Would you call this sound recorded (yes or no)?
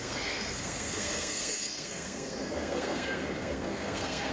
no